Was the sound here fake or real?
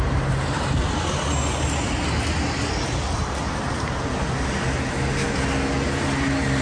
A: real